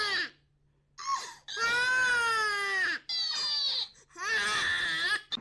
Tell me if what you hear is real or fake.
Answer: real